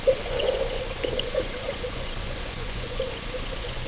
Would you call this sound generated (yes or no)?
yes